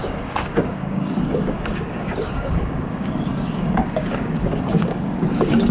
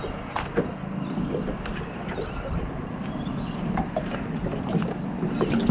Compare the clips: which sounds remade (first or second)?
first